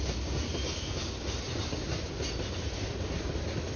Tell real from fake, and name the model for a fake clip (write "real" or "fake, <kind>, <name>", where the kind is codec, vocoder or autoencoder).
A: real